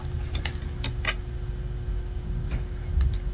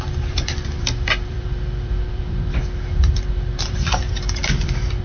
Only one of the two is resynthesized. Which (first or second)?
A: second